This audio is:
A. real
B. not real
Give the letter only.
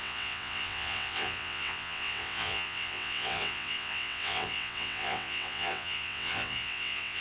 B